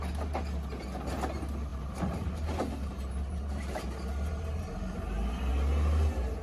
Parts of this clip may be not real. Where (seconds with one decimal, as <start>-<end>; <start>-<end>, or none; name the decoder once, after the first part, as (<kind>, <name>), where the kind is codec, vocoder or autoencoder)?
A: 1.7-5.5 (vocoder, BigVGAN v2)